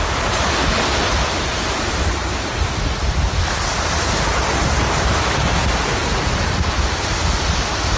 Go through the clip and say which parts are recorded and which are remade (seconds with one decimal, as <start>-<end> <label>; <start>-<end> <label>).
0.0-1.5 recorded; 1.5-2.7 remade; 2.7-4.6 recorded; 4.6-5.6 remade; 5.6-6.0 recorded; 6.0-6.7 remade; 6.7-8.0 recorded